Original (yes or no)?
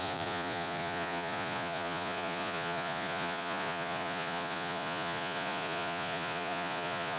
no